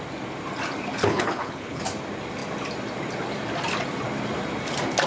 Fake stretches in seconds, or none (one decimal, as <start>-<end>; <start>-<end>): 1.0-1.8